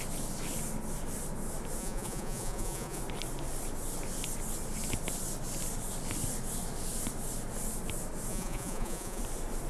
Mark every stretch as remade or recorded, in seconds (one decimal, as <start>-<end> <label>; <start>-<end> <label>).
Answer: 0.0-1.8 recorded; 1.8-3.0 remade; 3.0-8.3 recorded; 8.3-9.2 remade; 9.2-9.7 recorded

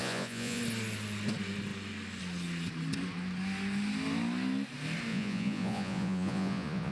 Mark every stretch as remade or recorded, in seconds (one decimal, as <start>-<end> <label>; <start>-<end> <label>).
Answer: 0.0-0.6 remade; 0.6-5.1 recorded; 5.1-6.9 remade

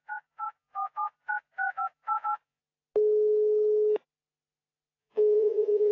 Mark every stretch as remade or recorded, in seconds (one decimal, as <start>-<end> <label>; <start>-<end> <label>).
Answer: 0.0-2.6 remade; 2.6-5.0 recorded; 5.0-5.9 remade

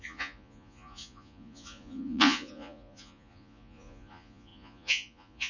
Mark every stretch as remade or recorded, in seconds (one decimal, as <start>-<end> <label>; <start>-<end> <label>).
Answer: 0.0-5.5 remade